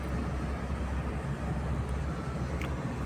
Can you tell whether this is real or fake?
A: real